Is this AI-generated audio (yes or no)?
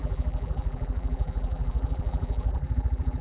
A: yes